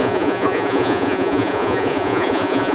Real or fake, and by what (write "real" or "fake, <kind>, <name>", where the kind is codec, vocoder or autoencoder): fake, vocoder, Vocos